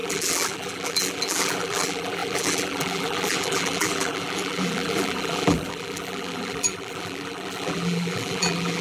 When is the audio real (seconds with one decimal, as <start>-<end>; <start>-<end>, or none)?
none